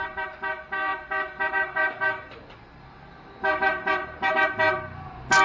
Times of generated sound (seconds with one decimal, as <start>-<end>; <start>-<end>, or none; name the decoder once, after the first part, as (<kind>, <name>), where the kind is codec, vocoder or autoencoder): none